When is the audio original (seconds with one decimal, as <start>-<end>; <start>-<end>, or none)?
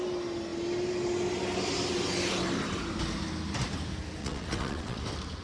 0.0-4.2; 5.0-5.4